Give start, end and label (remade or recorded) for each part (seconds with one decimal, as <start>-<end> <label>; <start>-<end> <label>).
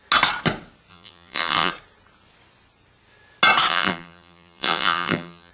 0.0-0.9 recorded; 0.9-1.7 remade; 1.7-3.7 recorded; 3.7-5.5 remade